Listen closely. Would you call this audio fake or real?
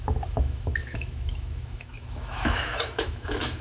fake